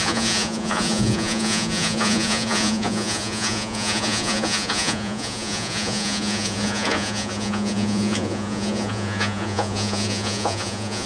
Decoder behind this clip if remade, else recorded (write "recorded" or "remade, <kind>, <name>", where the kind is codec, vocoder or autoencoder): remade, vocoder, Vocos